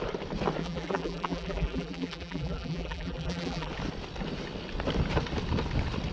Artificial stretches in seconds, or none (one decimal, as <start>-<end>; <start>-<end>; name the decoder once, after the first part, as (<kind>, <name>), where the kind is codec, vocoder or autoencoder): 0.6-3.7 (vocoder, BigVGAN v2)